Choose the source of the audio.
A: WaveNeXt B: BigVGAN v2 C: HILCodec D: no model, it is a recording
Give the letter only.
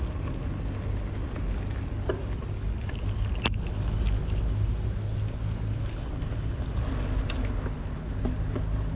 D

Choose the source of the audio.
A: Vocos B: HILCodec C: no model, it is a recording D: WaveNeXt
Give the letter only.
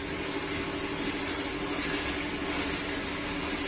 C